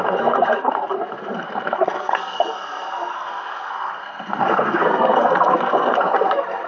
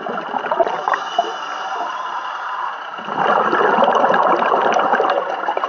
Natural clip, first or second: second